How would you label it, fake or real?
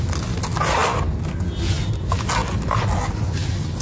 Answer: real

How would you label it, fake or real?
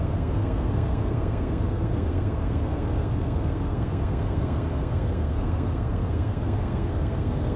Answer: fake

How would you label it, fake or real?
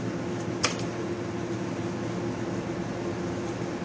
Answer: real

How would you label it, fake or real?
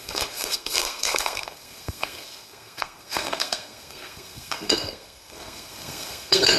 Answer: fake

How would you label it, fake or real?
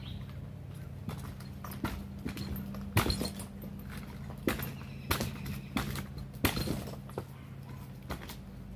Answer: real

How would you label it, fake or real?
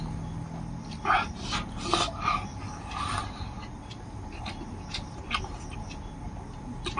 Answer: real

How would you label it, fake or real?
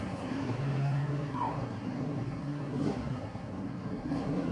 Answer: fake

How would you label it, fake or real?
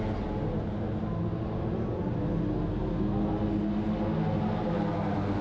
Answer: real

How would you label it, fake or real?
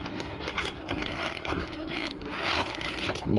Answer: fake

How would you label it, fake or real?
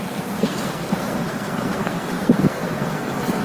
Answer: fake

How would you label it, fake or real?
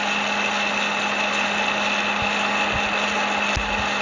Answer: real